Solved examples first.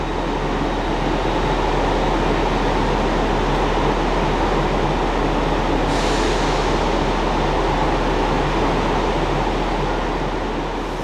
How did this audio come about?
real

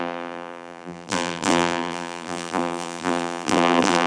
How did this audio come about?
fake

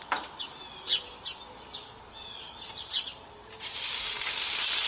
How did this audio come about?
real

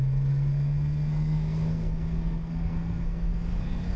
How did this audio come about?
fake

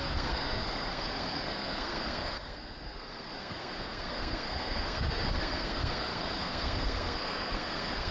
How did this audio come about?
fake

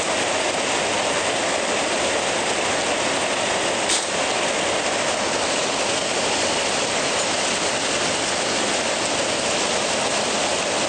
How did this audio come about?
real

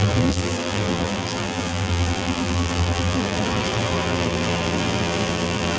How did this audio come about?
fake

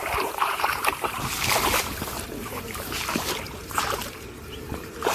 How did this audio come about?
fake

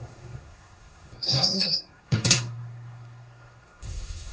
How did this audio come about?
fake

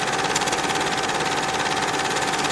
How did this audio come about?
real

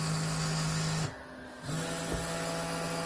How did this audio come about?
real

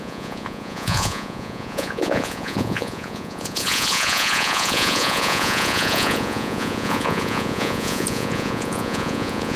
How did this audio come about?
fake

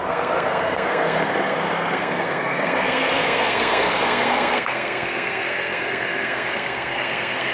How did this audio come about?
fake